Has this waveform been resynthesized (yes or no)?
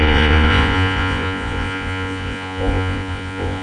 yes